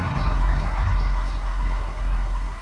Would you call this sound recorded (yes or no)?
no